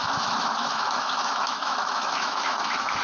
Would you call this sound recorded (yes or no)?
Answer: no